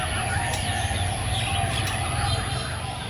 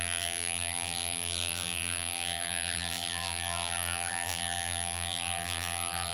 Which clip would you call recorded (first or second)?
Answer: first